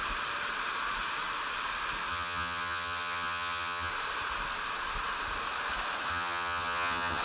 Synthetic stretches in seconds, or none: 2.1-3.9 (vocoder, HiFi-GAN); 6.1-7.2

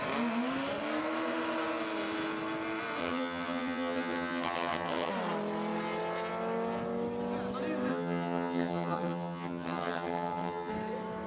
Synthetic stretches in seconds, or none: 3.0-5.1 (vocoder, HiFi-GAN); 7.9-10.7

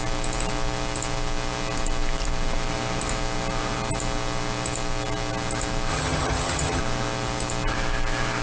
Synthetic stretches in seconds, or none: 5.9-6.8 (vocoder, HiFi-GAN)

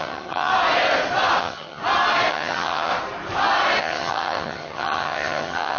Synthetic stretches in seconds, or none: 0.0-0.5 (vocoder, HiFi-GAN); 1.4-1.8; 2.3-2.9; 3.8-5.8

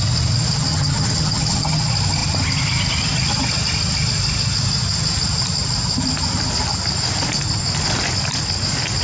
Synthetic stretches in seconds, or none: 0.7-1.8 (vocoder, HiFi-GAN)

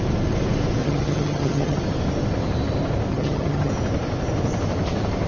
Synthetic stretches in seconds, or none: 0.8-1.8 (vocoder, HiFi-GAN); 3.1-3.7

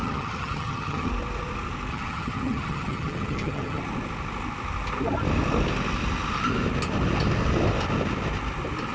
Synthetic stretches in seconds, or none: 0.0-1.1 (vocoder, HiFi-GAN); 1.9-3.8

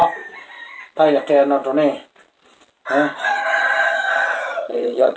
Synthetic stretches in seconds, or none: 3.3-5.2 (vocoder, HiFi-GAN)